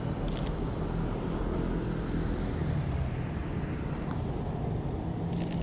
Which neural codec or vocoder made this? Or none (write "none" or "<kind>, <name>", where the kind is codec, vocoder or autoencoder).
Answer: none